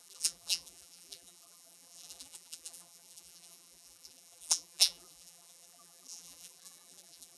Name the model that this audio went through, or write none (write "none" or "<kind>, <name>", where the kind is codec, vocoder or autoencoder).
vocoder, BigVGAN v2